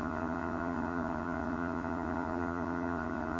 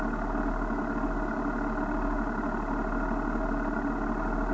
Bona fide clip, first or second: second